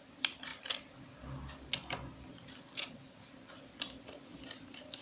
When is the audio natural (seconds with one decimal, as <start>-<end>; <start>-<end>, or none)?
0.5-3.5; 4.3-5.0